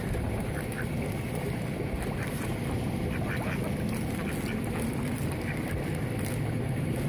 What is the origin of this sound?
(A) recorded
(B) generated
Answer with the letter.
A